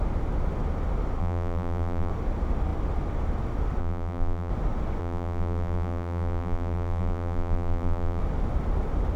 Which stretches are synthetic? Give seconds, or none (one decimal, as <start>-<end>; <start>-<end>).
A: 1.2-2.1; 3.8-4.5; 5.0-8.2